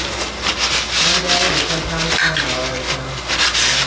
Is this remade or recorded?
recorded